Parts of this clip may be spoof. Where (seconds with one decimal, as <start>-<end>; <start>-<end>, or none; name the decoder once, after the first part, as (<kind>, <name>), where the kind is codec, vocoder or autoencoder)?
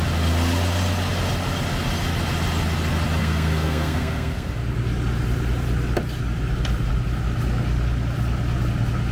3.2-4.5 (codec, SNAC)